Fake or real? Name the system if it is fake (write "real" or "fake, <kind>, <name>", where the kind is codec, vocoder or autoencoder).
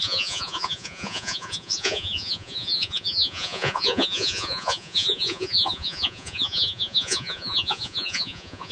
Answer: fake, vocoder, Vocos